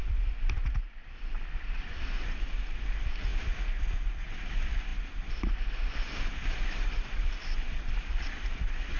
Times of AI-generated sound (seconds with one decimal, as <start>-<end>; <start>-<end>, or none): 0.0-2.5